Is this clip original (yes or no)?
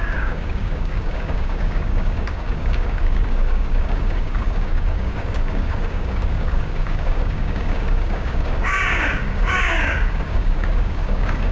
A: no